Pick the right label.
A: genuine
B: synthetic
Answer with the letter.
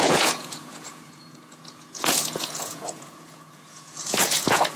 B